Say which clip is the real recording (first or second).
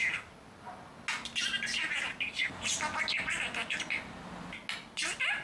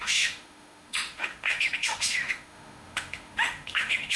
first